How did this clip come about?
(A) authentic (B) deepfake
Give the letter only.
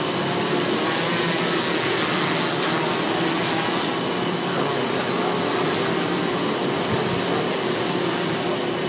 A